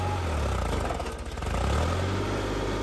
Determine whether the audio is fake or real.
real